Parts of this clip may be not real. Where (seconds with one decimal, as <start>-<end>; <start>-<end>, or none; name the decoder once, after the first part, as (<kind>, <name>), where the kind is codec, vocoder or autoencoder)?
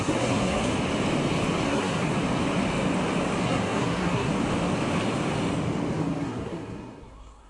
0.0-0.7 (codec, SNAC); 1.7-2.1; 3.4-4.3; 6.0-7.5